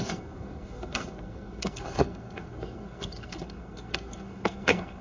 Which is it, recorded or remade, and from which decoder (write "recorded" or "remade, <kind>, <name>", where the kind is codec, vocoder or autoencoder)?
remade, codec, SNAC